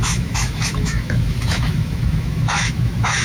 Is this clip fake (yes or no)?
yes